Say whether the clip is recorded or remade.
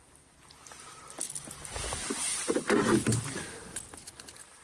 recorded